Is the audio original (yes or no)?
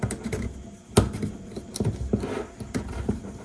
yes